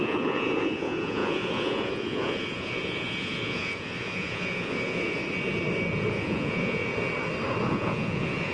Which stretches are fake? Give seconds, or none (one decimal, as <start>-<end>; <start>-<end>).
0.0-5.2; 6.1-6.9; 7.6-8.5